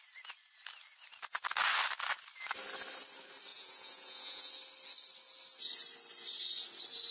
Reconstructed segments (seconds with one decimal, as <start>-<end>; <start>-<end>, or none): 3.5-4.5